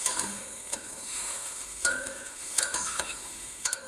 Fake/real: fake